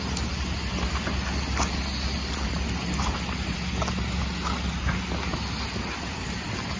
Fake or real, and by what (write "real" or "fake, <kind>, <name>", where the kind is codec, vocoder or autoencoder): real